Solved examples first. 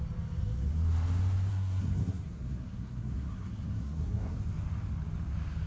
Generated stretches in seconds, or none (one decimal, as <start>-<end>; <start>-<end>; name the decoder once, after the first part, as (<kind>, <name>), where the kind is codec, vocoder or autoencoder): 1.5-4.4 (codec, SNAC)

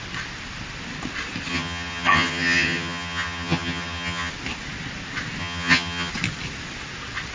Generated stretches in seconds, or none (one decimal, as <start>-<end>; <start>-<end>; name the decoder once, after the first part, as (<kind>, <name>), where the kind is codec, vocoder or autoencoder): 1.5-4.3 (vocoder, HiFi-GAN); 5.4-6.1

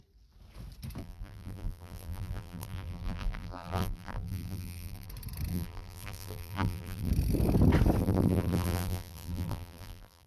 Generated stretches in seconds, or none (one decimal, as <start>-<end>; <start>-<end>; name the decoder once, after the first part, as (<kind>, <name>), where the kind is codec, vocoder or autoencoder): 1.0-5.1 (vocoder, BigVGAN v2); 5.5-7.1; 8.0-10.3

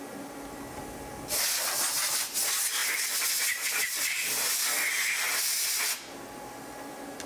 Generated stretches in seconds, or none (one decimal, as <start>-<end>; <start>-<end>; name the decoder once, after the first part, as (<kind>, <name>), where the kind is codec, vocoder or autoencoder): none

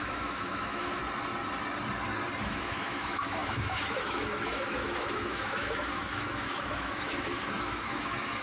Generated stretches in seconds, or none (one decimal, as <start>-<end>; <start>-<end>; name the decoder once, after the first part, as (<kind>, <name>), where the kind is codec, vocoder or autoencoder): 0.0-1.0 (autoencoder, DAC-VAE); 2.4-8.4

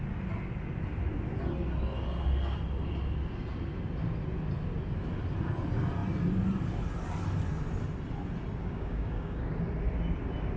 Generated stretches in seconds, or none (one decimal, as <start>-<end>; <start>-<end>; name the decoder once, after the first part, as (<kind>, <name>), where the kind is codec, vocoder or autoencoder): 8.6-9.4 (codec, DAC)

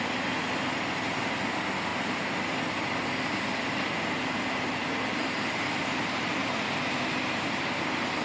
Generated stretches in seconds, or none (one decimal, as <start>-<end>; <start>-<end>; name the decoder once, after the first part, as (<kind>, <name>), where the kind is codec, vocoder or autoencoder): 1.9-2.7 (vocoder, BigVGAN v2); 5.2-5.8; 6.4-7.2